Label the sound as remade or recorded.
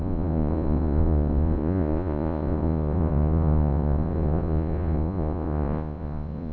remade